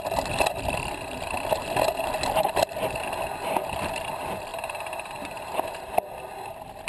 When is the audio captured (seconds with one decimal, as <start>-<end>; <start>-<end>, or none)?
0.0-4.5; 5.6-6.9